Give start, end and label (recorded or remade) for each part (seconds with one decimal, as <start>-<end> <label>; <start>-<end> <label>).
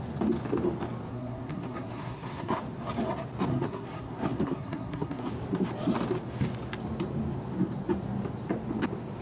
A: 0.0-1.1 recorded; 1.1-2.6 remade; 2.6-3.5 recorded; 3.5-5.3 remade; 5.3-9.2 recorded